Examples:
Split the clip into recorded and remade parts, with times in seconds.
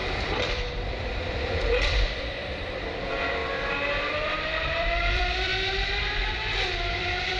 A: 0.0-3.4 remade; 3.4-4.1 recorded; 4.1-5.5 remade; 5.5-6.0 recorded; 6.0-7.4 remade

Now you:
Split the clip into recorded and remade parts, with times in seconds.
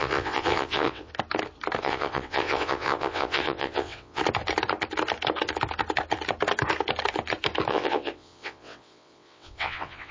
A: 0.0-1.1 remade; 1.1-1.8 recorded; 1.8-4.2 remade; 4.2-7.7 recorded; 7.7-10.1 remade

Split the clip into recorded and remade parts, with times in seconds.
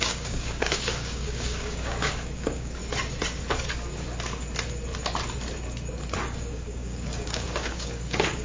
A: 0.0-2.8 remade; 2.8-6.2 recorded; 6.2-8.4 remade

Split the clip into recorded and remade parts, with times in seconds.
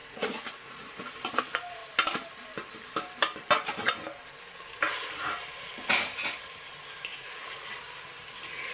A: 0.0-1.1 remade; 1.1-7.1 recorded; 7.1-7.7 remade; 7.7-8.7 recorded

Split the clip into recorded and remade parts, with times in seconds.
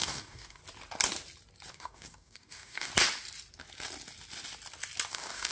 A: 0.0-0.6 remade; 0.6-1.7 recorded; 1.7-2.9 remade; 2.9-5.1 recorded; 5.1-5.5 remade